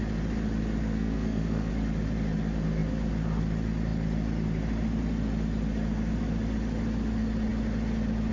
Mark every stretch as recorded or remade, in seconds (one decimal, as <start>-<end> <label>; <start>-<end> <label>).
0.0-0.8 recorded; 0.8-1.7 remade; 1.7-8.3 recorded